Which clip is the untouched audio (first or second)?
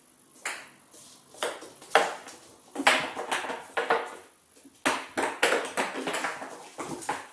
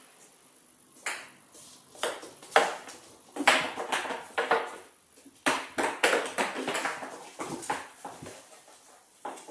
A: first